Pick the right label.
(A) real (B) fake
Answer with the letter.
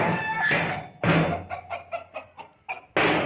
A